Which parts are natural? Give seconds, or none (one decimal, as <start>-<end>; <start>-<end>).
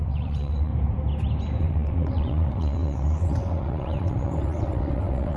0.7-1.6